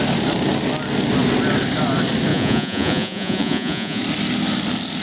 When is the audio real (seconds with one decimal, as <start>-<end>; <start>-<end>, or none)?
0.0-2.3; 4.0-5.0